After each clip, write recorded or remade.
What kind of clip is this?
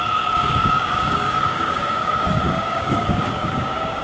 remade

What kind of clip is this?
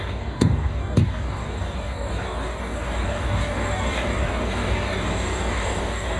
remade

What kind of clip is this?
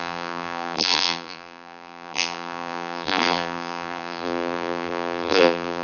remade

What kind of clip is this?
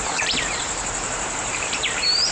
remade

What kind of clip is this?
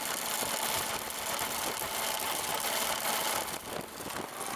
recorded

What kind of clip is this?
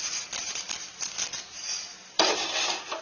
recorded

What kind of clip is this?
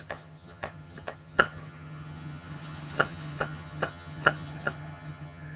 remade